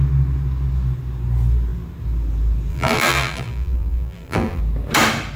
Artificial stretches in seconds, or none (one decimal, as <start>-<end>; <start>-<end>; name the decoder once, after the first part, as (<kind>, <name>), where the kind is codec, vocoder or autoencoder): 2.7-4.6 (vocoder, BigVGAN v2)